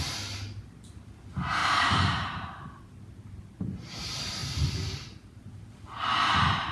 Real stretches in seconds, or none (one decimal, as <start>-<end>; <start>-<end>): 0.0-1.6; 2.8-6.7